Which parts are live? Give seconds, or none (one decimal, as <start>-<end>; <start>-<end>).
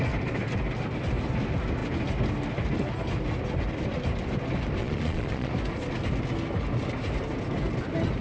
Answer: 0.0-4.8; 5.5-8.2